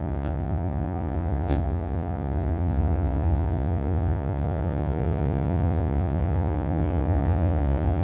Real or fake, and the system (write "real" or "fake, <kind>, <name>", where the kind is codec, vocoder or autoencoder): fake, vocoder, Vocos